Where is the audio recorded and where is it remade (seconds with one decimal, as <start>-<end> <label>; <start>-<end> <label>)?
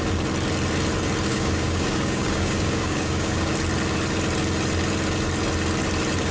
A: 0.0-1.3 recorded; 1.3-3.5 remade; 3.5-6.3 recorded